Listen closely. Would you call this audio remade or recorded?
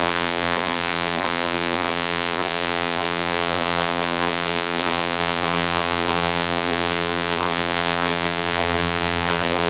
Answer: remade